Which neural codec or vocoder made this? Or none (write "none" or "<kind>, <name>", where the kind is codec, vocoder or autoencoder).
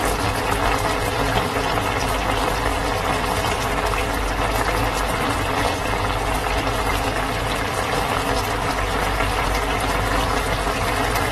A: none